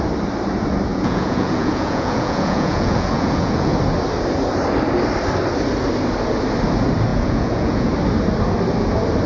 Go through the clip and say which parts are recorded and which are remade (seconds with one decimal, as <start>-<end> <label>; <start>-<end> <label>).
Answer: 0.0-0.9 recorded; 0.9-3.7 remade; 3.7-7.1 recorded; 7.1-7.9 remade; 7.9-9.3 recorded